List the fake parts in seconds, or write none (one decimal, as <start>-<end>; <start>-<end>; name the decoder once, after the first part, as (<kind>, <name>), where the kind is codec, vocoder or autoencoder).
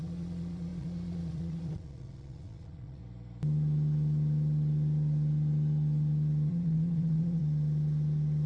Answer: 0.0-3.0 (vocoder, Vocos); 6.5-7.4